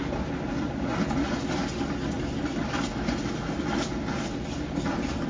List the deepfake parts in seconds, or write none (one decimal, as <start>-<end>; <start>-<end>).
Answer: none